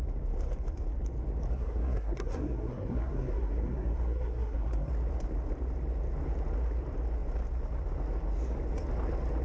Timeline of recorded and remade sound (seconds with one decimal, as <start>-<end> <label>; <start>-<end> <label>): 0.0-1.5 recorded; 1.5-4.9 remade; 4.9-9.4 recorded